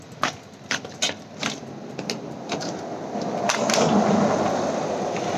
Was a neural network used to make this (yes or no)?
no